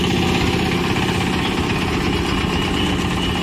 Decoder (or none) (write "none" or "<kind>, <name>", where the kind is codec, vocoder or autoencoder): none